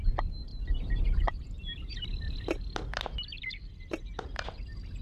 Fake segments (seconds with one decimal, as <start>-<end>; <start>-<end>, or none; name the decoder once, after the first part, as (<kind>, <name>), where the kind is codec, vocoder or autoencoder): none

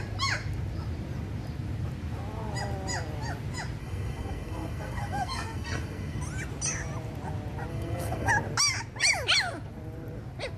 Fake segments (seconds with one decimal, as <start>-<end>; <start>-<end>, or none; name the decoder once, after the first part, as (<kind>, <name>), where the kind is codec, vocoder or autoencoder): 3.8-6.2 (codec, SNAC); 7.7-8.3

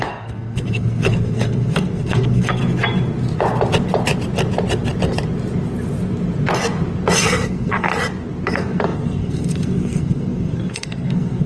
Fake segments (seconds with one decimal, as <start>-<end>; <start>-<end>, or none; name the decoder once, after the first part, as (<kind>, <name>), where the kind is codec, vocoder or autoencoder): 0.0-2.6 (codec, SNAC); 7.2-7.9; 8.5-11.5